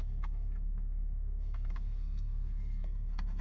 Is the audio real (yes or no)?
no